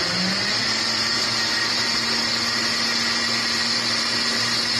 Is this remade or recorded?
recorded